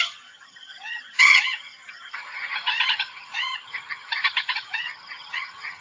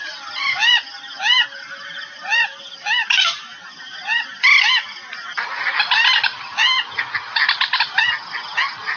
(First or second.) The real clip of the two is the second